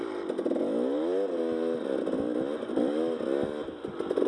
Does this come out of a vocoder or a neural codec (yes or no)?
no